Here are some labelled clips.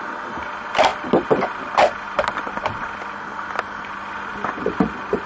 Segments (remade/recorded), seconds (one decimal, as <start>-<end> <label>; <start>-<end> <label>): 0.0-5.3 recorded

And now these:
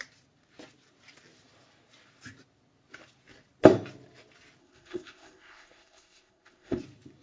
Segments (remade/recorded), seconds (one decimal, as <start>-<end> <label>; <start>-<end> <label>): 0.0-4.6 recorded; 4.6-6.8 remade; 6.8-7.2 recorded

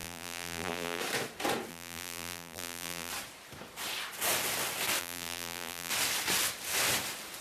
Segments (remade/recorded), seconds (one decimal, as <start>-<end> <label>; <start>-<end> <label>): 0.0-1.0 remade; 1.0-1.7 recorded; 1.7-3.1 remade; 3.1-5.0 recorded; 5.0-5.9 remade; 5.9-7.4 recorded